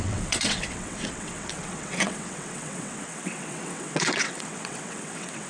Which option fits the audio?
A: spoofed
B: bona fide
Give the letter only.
A